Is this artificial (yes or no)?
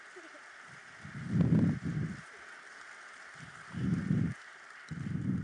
no